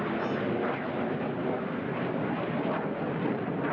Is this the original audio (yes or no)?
yes